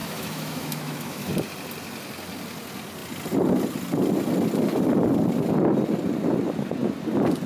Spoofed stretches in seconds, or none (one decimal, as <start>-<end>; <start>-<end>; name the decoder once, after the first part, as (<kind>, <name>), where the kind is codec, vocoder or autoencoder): 0.0-1.3 (autoencoder, DAC-VAE)